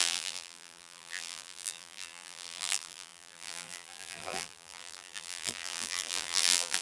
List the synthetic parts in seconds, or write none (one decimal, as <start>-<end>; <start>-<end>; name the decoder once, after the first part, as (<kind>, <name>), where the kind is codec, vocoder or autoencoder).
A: 0.0-6.8 (vocoder, BigVGAN v2)